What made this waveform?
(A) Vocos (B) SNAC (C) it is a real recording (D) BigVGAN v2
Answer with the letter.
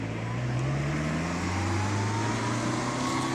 C